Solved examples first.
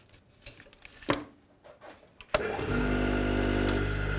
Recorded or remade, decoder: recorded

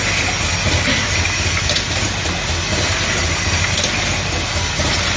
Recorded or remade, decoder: recorded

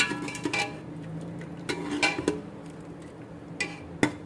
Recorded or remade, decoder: recorded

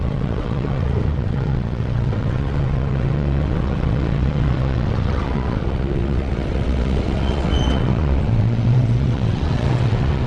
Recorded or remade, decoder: remade, vocoder, WaveNeXt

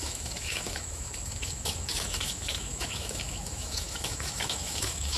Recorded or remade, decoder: remade, autoencoder, DAC-VAE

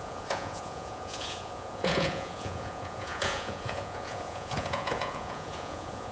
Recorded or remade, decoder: remade, vocoder, Vocos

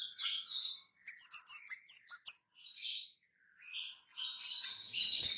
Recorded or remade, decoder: recorded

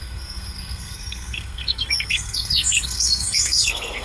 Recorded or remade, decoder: remade, codec, SNAC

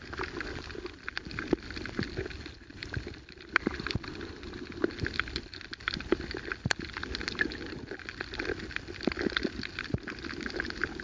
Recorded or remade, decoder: recorded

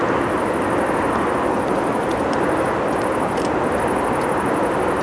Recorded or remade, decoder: recorded